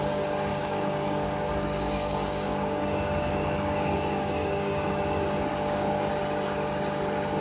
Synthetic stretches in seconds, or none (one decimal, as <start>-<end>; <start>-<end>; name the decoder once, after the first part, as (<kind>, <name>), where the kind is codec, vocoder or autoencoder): 0.5-4.9 (codec, DAC); 5.5-6.1